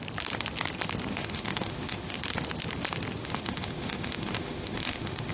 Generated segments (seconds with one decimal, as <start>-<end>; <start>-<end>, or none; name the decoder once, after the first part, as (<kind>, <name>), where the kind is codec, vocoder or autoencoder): 1.1-2.2 (autoencoder, DAC-VAE); 3.2-5.3